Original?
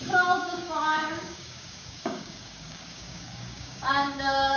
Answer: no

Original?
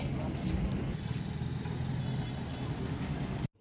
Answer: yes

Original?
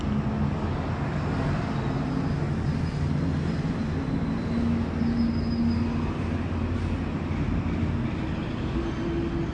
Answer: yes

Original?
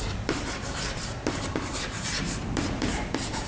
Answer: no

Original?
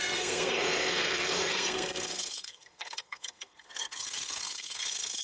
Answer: no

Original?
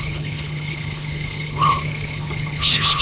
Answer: no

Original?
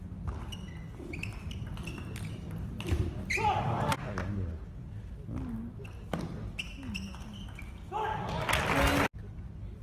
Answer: yes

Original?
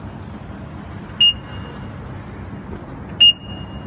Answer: yes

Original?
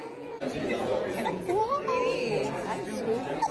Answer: no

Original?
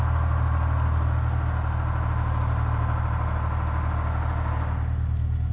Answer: yes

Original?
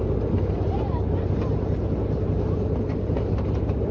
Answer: no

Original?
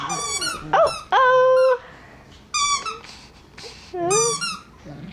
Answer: yes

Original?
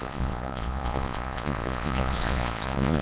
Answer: no